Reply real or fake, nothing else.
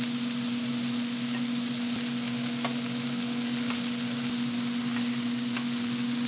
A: real